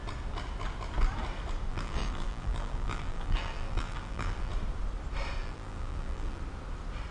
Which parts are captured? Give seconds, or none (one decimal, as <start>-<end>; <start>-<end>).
0.0-1.7; 4.5-5.4; 6.4-7.1